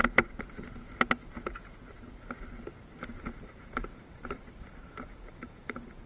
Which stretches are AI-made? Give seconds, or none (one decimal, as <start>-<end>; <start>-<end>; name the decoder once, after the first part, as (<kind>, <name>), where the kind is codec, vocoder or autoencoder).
2.9-6.1 (vocoder, BigVGAN v2)